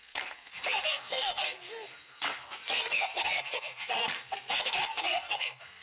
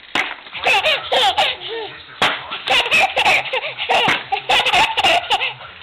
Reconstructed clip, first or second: first